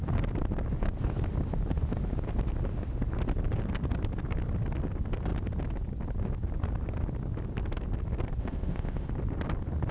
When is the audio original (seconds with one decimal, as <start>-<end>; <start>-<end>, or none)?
0.0-8.4; 9.1-9.9